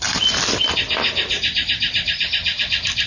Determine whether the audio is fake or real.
fake